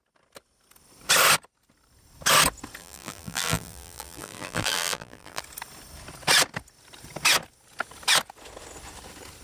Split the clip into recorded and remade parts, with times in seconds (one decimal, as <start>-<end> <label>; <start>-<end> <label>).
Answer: 0.0-2.8 recorded; 2.8-5.4 remade; 5.4-9.4 recorded